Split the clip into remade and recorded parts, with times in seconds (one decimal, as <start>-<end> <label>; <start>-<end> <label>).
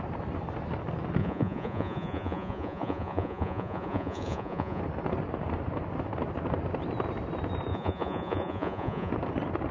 0.0-1.2 recorded; 1.2-4.8 remade; 4.8-7.7 recorded; 7.7-9.1 remade; 9.1-9.7 recorded